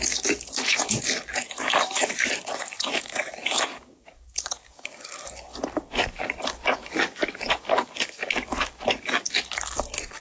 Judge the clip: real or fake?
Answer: fake